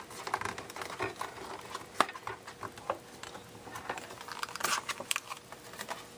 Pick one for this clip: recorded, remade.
recorded